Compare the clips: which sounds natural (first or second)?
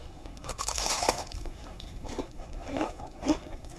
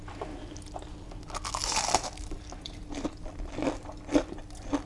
second